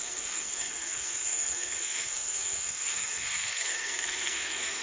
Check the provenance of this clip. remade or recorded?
remade